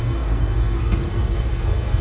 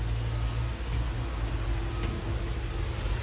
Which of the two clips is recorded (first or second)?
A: second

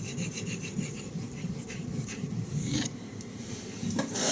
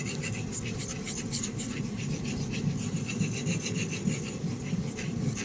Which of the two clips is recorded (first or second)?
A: second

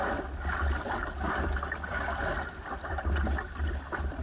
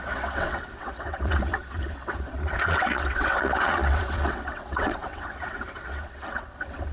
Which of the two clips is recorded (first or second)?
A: first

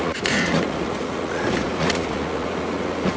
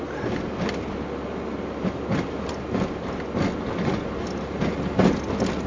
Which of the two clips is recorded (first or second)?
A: second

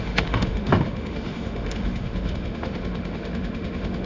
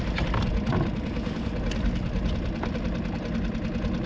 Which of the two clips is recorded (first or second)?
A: second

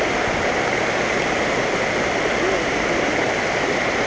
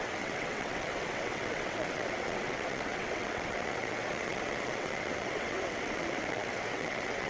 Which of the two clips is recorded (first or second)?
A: first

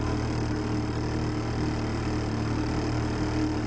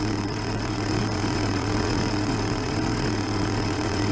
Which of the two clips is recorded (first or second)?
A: first